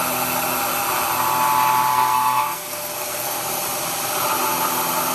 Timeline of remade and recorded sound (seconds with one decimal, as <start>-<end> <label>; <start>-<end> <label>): 0.0-1.9 recorded; 1.9-3.4 remade; 3.4-5.1 recorded